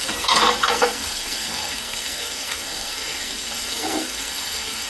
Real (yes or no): no